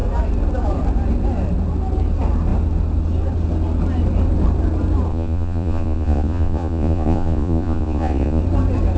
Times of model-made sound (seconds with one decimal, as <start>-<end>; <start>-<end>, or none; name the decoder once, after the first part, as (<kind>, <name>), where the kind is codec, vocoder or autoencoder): 5.1-8.4 (vocoder, Vocos)